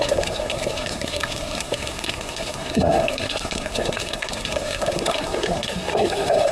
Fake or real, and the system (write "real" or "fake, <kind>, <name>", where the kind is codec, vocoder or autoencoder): fake, codec, SNAC